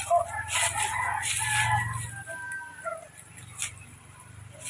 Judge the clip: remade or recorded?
recorded